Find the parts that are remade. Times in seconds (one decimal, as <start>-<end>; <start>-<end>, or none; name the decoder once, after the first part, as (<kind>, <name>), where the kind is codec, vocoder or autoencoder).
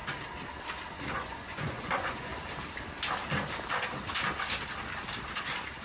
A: 0.9-2.3 (vocoder, Vocos)